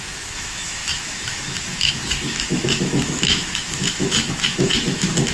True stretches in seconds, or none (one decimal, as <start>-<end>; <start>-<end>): none